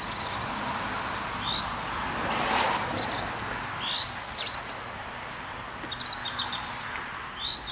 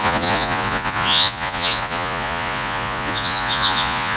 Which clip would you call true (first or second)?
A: first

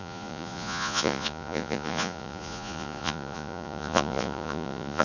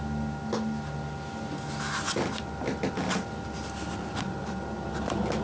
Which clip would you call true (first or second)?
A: second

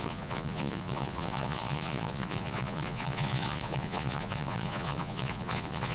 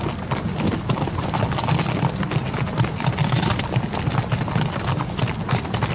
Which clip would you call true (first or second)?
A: second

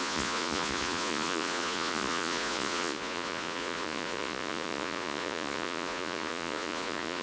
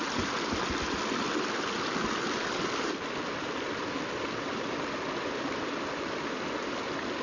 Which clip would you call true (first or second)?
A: second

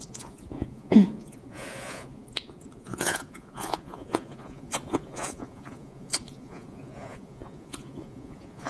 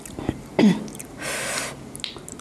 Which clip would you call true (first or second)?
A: second